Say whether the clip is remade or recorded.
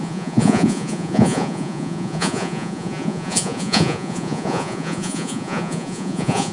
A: remade